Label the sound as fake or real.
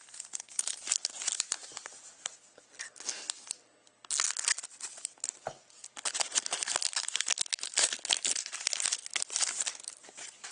real